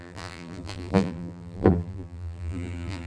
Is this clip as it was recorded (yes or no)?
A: no